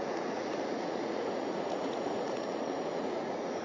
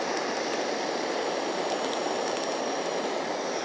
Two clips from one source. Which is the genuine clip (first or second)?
second